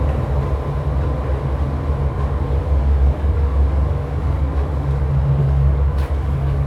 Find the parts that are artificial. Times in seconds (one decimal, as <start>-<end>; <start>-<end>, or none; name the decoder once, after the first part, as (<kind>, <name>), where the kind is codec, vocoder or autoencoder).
2.1-5.0 (codec, DAC); 5.4-6.7